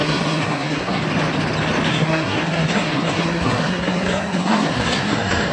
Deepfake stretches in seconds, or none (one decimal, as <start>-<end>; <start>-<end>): 0.0-1.0; 1.9-5.5